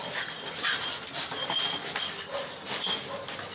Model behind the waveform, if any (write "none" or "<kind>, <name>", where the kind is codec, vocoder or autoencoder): none